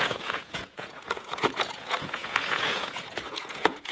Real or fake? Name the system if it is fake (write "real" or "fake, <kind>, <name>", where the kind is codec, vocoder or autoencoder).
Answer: fake, vocoder, Vocos